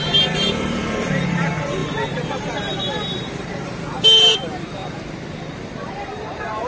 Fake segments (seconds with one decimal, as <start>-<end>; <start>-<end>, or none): 0.0-4.8; 5.6-6.7